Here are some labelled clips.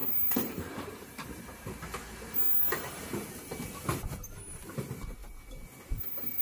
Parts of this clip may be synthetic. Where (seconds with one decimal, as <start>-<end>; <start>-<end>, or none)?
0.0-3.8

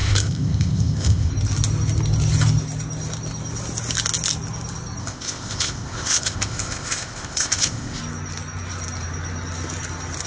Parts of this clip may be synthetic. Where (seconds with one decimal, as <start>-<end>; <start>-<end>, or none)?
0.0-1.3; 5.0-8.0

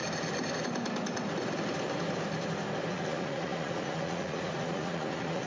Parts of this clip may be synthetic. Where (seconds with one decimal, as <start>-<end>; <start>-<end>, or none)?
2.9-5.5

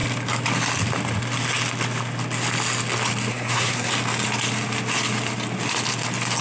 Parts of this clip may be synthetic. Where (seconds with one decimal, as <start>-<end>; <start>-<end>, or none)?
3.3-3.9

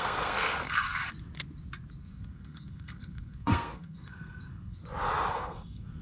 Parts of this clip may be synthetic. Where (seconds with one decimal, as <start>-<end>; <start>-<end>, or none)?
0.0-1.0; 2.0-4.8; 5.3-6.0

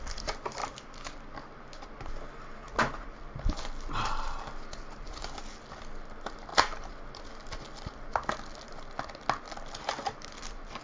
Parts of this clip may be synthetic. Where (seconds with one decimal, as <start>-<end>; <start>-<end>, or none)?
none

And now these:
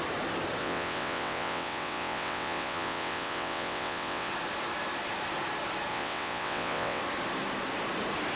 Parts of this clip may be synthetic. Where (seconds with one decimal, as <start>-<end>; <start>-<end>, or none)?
0.6-4.3; 5.9-7.0

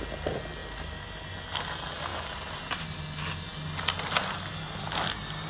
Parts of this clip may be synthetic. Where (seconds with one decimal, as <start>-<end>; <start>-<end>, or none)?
none